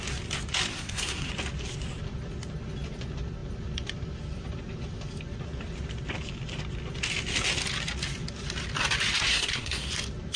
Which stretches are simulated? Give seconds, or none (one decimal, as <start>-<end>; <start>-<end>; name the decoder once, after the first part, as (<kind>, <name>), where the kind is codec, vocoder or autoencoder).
0.7-1.3 (codec, SNAC); 9.3-9.9